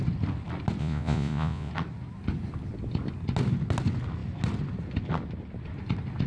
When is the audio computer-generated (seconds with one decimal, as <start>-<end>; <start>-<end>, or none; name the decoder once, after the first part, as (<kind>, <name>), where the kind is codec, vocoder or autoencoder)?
0.8-1.7 (vocoder, Vocos)